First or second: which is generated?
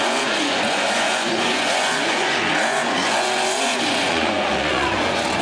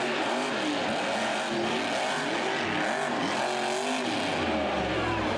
first